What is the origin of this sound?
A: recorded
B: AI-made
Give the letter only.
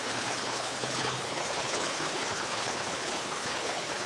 B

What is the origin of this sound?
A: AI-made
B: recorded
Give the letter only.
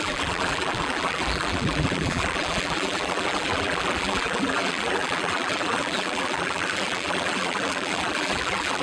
A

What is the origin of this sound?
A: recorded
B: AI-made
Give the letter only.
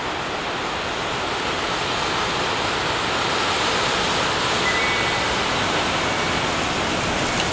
A